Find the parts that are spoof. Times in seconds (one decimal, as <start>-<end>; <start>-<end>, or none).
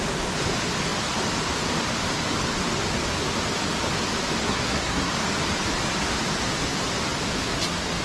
4.4-5.1